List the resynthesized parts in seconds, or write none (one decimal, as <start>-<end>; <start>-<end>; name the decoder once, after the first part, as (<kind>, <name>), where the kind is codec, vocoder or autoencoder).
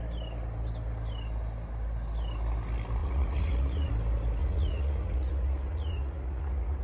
3.0-3.9 (vocoder, Vocos); 4.4-6.8